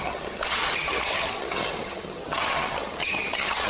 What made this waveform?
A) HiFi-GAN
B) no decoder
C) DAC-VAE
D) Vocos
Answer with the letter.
A